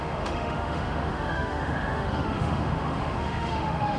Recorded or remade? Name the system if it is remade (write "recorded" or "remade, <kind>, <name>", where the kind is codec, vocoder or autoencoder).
remade, autoencoder, DAC-VAE